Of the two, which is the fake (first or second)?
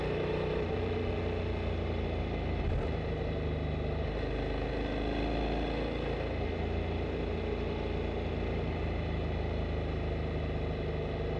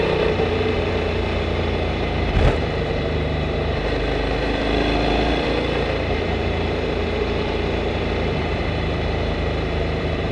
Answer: second